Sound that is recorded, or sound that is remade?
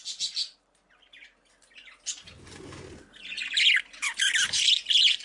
recorded